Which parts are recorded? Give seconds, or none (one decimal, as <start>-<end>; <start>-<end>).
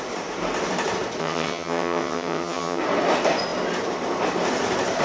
0.0-1.2; 2.8-5.0